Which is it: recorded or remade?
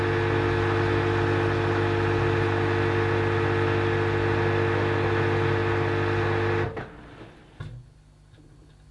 recorded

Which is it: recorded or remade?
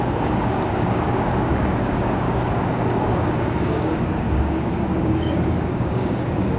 remade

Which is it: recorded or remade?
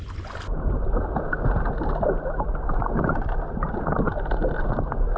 recorded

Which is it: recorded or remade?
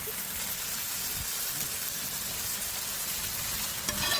recorded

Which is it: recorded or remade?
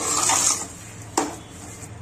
recorded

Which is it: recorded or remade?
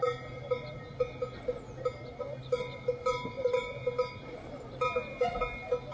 recorded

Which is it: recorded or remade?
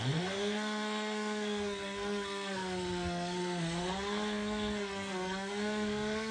remade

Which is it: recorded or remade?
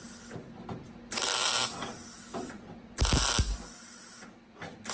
recorded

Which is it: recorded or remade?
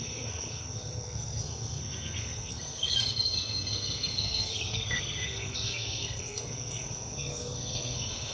remade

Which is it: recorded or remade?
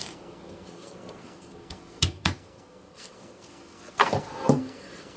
remade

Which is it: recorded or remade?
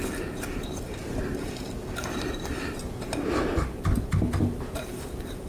recorded